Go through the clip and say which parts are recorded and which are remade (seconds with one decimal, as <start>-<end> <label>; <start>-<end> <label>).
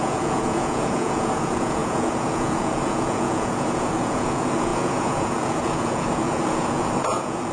0.0-7.5 remade